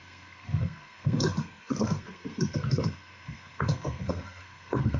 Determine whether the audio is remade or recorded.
remade